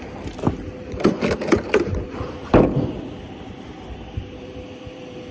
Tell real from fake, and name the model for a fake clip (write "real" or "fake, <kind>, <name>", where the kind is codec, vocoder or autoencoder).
fake, vocoder, BigVGAN v2